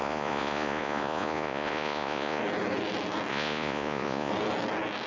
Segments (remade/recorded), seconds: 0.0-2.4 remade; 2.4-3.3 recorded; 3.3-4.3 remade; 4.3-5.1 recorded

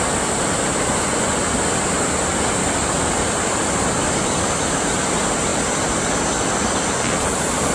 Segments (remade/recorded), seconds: 0.0-0.9 recorded; 0.9-1.4 remade; 1.4-7.7 recorded

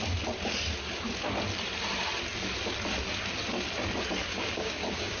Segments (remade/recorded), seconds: 0.0-4.3 recorded; 4.3-5.2 remade

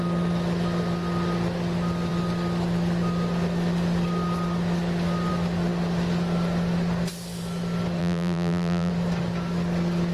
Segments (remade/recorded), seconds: 0.0-8.0 recorded; 8.0-8.9 remade; 8.9-10.1 recorded

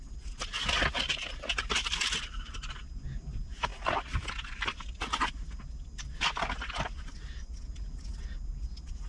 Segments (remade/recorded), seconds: 0.0-9.1 recorded

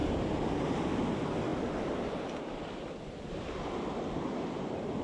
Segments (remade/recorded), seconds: 0.0-5.0 recorded